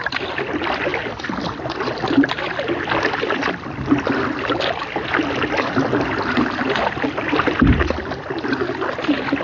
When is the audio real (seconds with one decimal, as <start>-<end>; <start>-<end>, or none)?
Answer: 0.0-9.4